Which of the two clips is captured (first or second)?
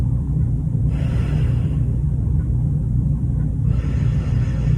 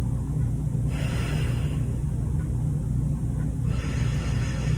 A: second